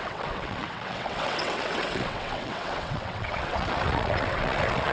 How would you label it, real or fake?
fake